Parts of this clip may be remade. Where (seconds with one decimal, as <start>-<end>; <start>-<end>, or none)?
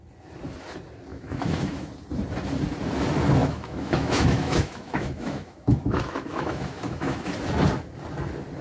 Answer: 1.1-1.9; 3.4-7.3